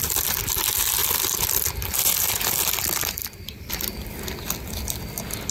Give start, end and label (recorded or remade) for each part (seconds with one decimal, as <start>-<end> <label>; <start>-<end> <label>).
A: 0.0-1.0 recorded; 1.0-2.1 remade; 2.1-3.2 recorded; 3.2-3.7 remade; 3.7-5.5 recorded